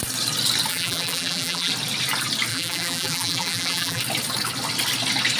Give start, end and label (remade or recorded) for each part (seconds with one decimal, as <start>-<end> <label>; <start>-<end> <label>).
0.0-0.7 recorded; 0.7-1.7 remade; 1.7-2.5 recorded; 2.5-4.0 remade; 4.0-5.4 recorded